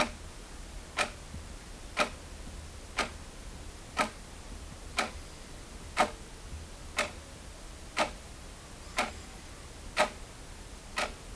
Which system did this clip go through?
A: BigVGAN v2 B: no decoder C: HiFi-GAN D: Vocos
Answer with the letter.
B